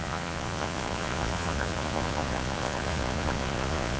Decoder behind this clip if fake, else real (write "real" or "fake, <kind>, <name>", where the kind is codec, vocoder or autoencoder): fake, vocoder, Vocos